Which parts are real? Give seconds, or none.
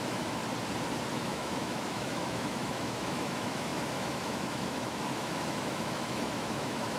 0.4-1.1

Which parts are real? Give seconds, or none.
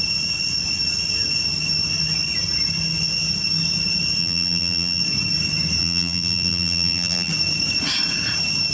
0.0-4.2; 5.0-5.8; 7.3-8.7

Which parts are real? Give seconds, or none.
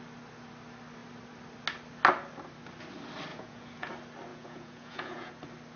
0.0-3.3; 3.9-4.3; 5.3-5.8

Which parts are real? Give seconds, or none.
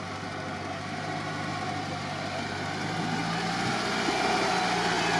0.0-1.5; 2.5-5.2